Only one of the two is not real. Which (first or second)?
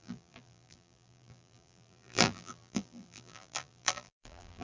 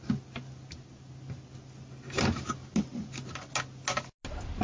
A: first